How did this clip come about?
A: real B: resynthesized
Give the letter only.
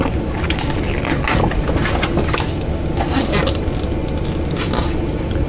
A